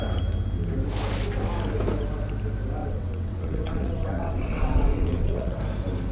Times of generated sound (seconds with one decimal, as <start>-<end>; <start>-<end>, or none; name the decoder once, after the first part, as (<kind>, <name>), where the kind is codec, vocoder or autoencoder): 2.8-5.6 (vocoder, WaveNeXt)

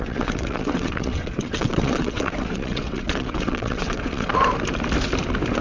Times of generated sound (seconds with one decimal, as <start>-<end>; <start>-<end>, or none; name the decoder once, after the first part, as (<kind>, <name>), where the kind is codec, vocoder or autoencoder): 0.0-4.3 (vocoder, WaveNeXt)

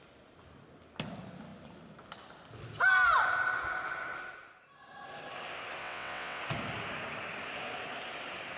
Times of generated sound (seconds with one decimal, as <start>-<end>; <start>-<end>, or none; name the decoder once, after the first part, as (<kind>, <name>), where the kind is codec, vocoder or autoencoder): 5.8-6.4 (vocoder, WaveNeXt)